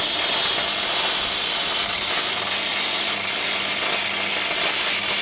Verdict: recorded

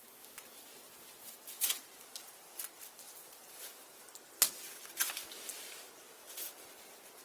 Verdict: recorded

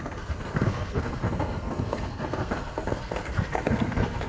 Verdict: remade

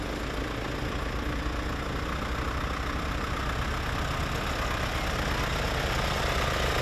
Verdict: recorded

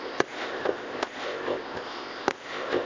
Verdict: remade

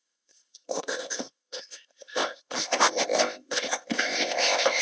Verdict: remade